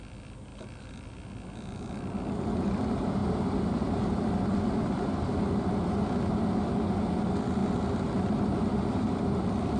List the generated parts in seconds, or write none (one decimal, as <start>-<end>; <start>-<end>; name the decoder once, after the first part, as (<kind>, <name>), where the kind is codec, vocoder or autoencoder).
none